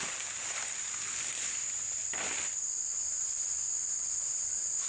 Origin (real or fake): real